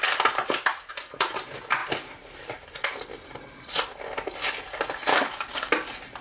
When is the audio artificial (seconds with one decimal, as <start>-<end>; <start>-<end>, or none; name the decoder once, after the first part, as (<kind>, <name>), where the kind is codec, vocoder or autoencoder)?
5.1-5.7 (codec, DAC)